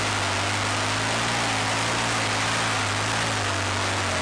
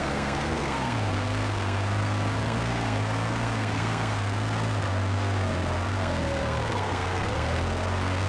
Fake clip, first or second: second